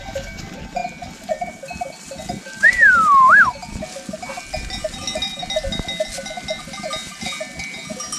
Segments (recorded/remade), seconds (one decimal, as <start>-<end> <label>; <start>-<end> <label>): 0.0-8.2 recorded